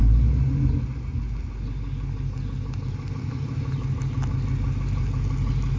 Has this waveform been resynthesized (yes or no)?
no